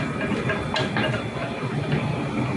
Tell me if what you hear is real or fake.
real